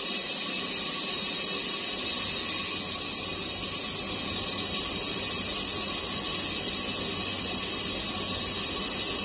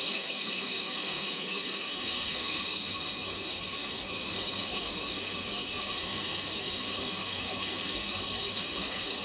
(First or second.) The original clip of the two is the first